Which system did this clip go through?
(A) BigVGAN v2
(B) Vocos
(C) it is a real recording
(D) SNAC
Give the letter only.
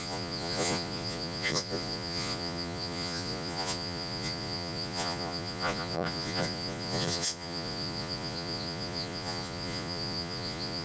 B